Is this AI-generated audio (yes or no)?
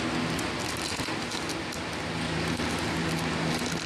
no